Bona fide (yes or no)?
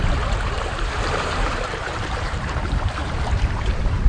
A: no